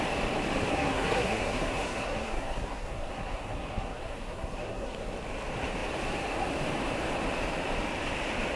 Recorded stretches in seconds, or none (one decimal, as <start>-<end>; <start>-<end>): 0.0-0.7; 5.1-8.6

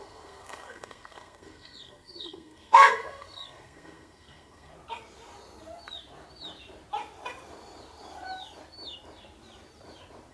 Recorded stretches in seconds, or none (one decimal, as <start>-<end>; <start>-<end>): 4.7-10.3

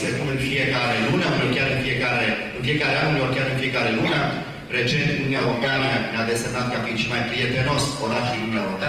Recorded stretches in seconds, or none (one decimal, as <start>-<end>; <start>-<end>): 0.5-5.3; 5.9-7.8